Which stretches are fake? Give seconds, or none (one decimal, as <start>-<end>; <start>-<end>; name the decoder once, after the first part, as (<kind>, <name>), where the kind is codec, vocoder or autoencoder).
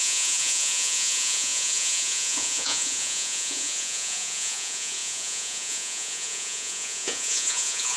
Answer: 0.0-8.0 (vocoder, Vocos)